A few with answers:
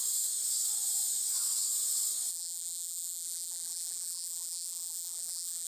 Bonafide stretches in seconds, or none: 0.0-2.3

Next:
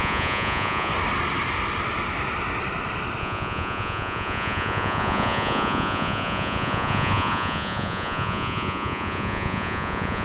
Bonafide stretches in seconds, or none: 0.9-3.2

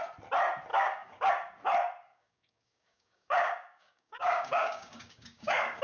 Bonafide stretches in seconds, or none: 0.0-0.7; 1.3-2.1